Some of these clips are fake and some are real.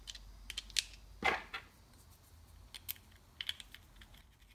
real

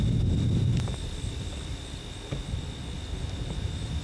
real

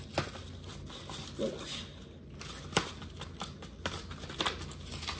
real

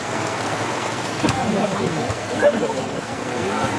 fake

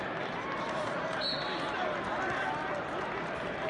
real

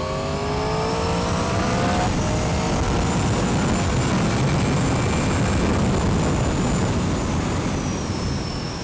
real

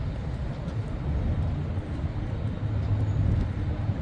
real